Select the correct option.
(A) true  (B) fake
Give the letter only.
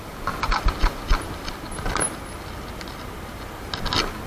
A